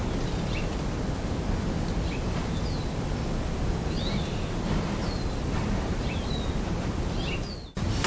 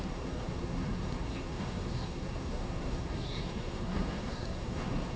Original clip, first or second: first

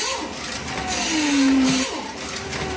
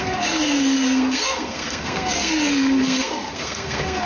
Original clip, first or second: first